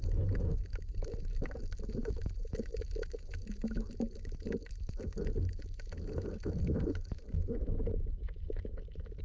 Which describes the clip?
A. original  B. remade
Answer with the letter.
B